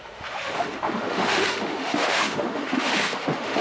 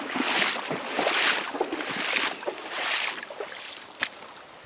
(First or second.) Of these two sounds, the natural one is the second